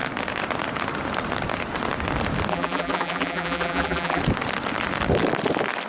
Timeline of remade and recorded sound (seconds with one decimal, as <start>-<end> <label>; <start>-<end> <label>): 0.0-2.5 recorded; 2.5-4.2 remade; 4.2-5.9 recorded